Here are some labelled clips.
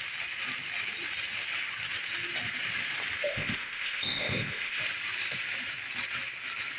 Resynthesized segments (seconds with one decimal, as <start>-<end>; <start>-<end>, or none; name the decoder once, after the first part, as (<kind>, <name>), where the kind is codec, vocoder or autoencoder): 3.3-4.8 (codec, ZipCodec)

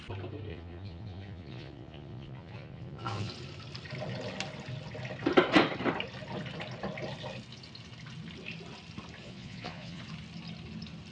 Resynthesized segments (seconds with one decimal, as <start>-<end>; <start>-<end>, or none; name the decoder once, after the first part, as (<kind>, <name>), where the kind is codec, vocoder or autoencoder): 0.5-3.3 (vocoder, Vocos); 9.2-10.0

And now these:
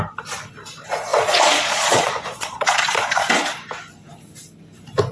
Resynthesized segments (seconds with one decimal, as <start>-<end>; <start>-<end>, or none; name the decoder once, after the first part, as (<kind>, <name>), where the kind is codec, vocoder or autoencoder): 1.1-3.3 (vocoder, Vocos)

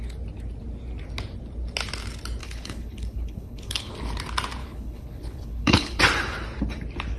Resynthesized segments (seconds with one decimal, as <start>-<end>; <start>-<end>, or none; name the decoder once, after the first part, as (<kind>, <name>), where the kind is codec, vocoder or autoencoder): 2.4-3.9 (codec, HILCodec); 4.6-6.0